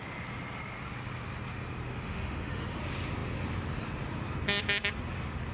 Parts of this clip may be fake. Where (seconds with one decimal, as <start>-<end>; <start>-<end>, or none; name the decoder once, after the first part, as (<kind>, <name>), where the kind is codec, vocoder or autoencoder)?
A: 1.9-2.8 (autoencoder, DAC-VAE)